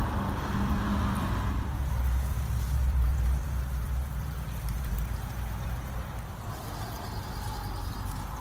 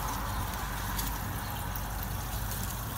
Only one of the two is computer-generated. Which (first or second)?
first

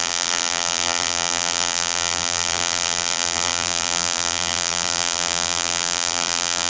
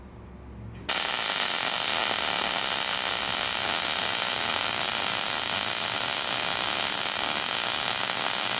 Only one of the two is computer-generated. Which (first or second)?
first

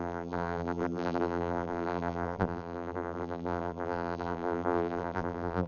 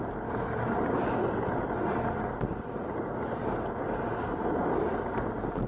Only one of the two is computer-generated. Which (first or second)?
first